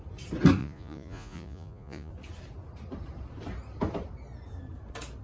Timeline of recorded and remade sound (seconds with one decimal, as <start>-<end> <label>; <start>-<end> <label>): 0.0-0.6 recorded; 0.6-2.1 remade; 2.1-5.2 recorded

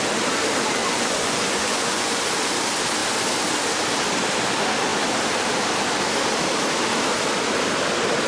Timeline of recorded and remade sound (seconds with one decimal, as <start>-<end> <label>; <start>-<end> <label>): 0.0-0.8 recorded; 0.8-2.2 remade; 2.2-8.3 recorded

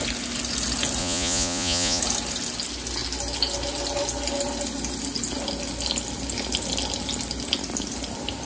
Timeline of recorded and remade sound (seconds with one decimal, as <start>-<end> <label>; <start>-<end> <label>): 0.0-1.0 recorded; 1.0-2.0 remade; 2.0-8.5 recorded

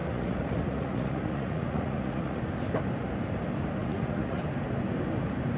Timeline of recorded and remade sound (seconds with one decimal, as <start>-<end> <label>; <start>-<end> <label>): 0.0-2.4 remade; 2.4-3.8 recorded; 3.8-4.4 remade; 4.4-5.6 recorded

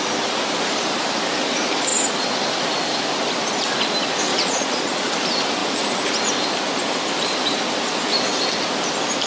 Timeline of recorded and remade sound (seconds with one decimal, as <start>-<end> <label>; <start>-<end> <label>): 0.0-4.3 recorded; 4.3-5.1 remade; 5.1-9.3 recorded

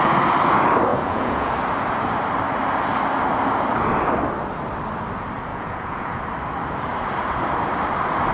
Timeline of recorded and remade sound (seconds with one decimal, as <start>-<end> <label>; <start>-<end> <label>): 0.0-0.9 recorded; 0.9-1.5 remade; 1.5-5.5 recorded; 5.5-6.2 remade; 6.2-8.3 recorded